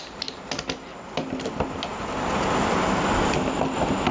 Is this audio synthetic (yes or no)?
no